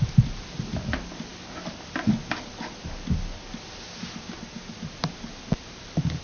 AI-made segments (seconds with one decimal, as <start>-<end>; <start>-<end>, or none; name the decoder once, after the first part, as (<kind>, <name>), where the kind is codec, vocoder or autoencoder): none